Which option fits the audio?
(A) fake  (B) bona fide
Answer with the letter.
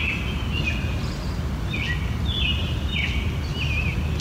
B